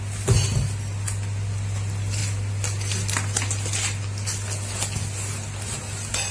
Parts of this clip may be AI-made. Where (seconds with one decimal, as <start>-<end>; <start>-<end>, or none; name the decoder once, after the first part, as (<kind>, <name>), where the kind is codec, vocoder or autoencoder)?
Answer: none